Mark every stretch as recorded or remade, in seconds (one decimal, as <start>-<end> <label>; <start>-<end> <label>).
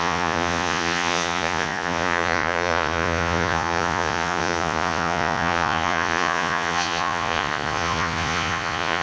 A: 0.0-9.0 remade